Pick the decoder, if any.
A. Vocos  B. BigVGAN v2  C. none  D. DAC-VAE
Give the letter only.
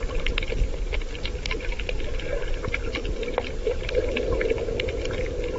C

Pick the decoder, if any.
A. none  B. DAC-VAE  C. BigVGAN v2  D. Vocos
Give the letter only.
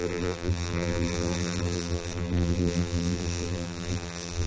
C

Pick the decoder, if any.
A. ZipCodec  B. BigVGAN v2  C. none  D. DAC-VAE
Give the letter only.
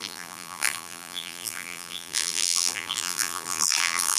B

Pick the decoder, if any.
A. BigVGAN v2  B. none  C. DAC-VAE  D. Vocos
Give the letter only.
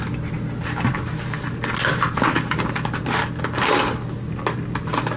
B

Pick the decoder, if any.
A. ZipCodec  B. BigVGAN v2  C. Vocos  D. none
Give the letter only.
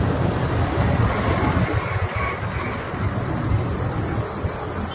D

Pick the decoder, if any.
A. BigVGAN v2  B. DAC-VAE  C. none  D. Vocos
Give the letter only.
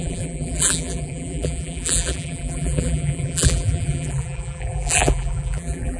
A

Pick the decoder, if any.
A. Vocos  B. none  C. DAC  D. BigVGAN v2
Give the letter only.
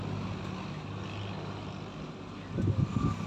B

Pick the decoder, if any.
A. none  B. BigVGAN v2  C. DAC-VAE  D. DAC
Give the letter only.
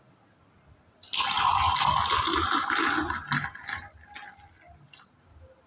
A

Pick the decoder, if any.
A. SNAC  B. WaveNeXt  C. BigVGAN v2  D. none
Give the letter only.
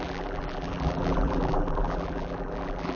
C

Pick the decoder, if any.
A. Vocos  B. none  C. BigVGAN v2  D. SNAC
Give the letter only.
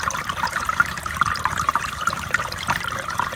C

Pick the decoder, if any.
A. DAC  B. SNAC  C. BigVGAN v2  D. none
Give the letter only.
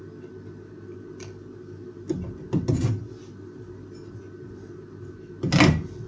D